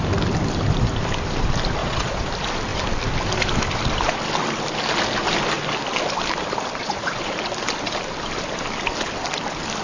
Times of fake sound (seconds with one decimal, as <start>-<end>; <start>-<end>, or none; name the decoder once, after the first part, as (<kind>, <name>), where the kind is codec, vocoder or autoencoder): 1.8-2.3 (vocoder, Vocos); 6.8-7.3

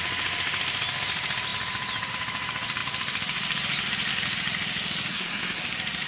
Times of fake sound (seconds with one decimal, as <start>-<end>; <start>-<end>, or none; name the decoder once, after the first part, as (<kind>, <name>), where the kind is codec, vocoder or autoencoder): 5.1-5.6 (codec, SNAC)

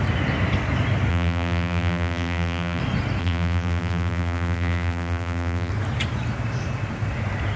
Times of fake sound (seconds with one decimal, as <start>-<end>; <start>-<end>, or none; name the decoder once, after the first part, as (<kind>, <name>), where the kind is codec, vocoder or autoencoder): 1.1-2.8 (vocoder, BigVGAN v2); 3.2-5.7

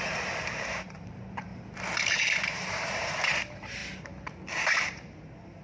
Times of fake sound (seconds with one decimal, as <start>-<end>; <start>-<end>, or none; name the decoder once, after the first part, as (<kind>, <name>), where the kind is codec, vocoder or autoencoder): 0.0-1.5 (vocoder, BigVGAN v2); 2.1-3.8; 4.5-5.6